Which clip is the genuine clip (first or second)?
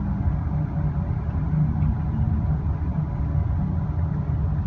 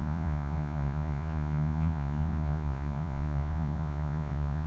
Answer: first